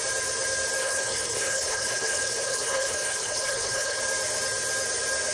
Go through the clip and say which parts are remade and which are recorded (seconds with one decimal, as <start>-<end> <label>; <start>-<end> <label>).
0.0-0.8 recorded; 0.8-4.0 remade; 4.0-5.3 recorded